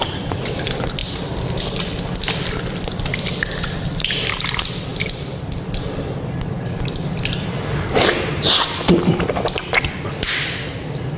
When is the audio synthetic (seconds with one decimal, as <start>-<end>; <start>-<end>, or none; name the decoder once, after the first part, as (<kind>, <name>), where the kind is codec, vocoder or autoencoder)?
0.0-1.0 (vocoder, BigVGAN v2); 2.6-11.2